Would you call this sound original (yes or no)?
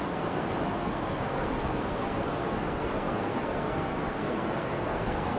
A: no